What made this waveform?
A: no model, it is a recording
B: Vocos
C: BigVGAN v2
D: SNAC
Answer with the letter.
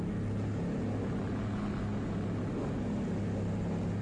A